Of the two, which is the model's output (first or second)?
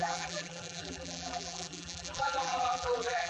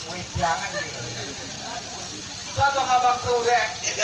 first